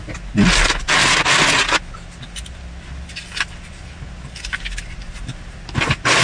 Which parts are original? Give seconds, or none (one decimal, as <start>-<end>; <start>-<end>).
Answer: 0.0-3.3; 3.9-6.2